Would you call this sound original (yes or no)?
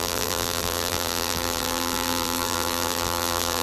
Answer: no